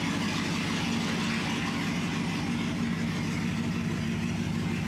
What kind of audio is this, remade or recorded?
recorded